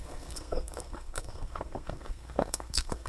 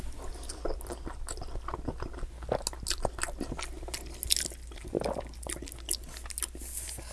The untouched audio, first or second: second